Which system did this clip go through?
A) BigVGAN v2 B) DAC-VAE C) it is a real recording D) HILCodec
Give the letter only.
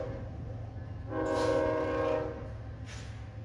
C